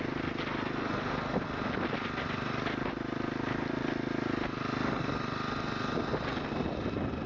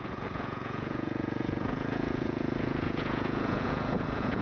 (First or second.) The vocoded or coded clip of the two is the second